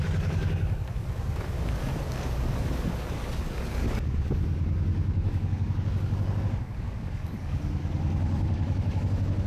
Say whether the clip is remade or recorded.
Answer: remade